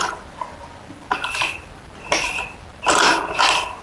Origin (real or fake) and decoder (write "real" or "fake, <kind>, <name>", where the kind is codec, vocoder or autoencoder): fake, vocoder, BigVGAN v2